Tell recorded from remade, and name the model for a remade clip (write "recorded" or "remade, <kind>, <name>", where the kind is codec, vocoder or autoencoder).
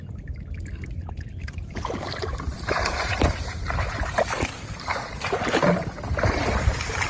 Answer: remade, vocoder, BigVGAN v2